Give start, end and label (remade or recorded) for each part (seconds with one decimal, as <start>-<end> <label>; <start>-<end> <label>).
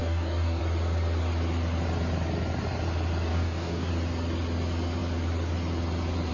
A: 0.0-0.6 remade; 0.6-3.3 recorded; 3.3-3.9 remade; 3.9-6.3 recorded